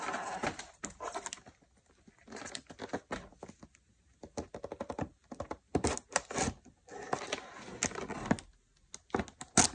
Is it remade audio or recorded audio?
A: recorded